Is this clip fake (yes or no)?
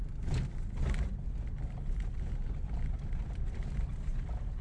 no